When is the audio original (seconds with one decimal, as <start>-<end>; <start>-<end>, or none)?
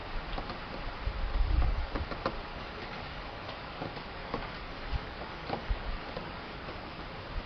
0.0-1.3; 1.9-2.5; 7.0-7.5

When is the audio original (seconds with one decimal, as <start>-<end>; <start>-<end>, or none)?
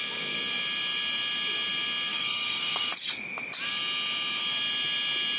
0.0-2.1; 2.9-5.4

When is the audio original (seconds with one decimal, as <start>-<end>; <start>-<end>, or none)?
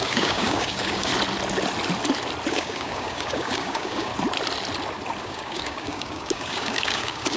1.1-2.5; 4.1-5.2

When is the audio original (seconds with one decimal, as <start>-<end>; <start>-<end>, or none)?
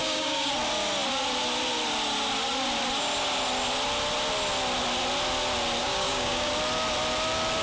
0.5-5.8; 6.5-7.6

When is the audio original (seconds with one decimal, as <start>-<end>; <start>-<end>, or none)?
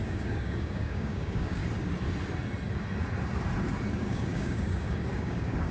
1.6-3.9